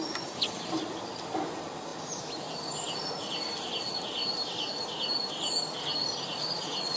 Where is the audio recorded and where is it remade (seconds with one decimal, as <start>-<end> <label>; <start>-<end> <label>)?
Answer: 0.0-7.0 recorded